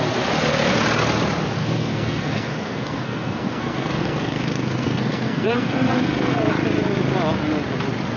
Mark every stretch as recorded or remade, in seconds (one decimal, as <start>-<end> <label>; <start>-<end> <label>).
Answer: 0.0-1.6 recorded; 1.6-6.5 remade; 6.5-8.2 recorded